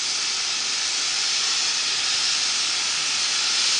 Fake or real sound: real